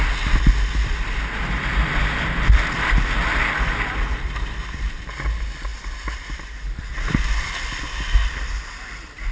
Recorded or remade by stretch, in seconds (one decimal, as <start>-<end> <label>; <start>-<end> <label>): 0.0-9.3 recorded